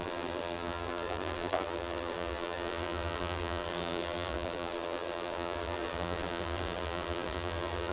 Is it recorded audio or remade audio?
remade